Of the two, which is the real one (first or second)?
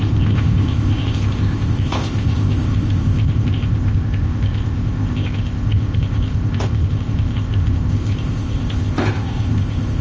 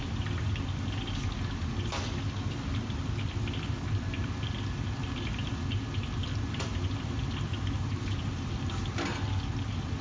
second